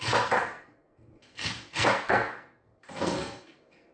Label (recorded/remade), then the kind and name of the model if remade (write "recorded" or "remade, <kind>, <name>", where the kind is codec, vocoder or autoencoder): remade, codec, SNAC